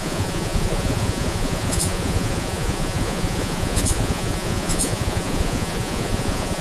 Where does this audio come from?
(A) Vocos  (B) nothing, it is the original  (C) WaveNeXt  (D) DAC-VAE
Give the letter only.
A